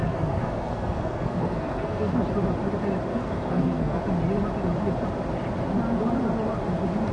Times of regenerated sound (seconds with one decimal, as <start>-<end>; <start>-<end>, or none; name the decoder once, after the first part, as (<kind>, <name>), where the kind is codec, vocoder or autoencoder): 0.0-2.2 (codec, SNAC); 3.1-4.0